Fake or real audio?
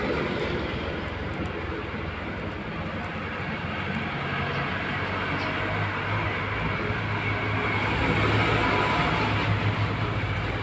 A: real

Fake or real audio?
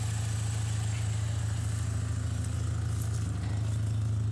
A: real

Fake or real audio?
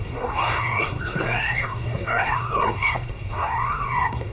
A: fake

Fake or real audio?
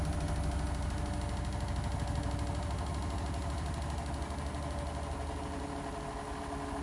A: real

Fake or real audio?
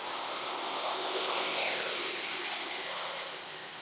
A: fake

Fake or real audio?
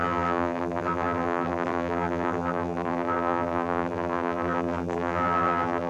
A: fake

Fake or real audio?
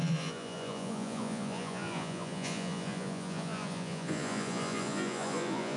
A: fake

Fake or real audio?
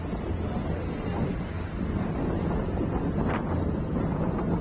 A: real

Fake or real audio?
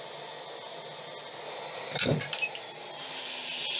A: real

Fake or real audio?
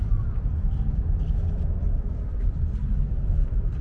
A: real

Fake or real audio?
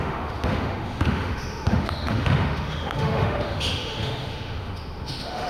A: fake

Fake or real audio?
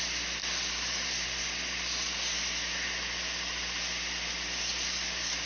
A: real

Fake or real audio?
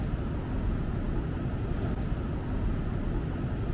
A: real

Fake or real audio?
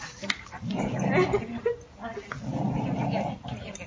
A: real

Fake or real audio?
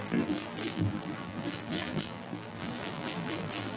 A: fake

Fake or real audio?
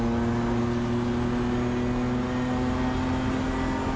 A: real